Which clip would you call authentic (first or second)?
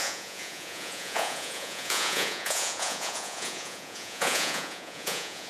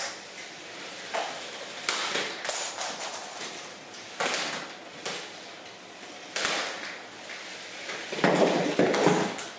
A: second